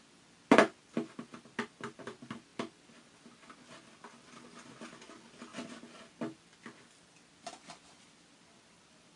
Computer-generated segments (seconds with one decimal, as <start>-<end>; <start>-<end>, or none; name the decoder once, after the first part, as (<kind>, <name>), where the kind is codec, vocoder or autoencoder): none